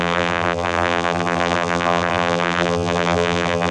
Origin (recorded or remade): remade